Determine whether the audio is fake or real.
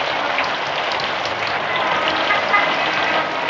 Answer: fake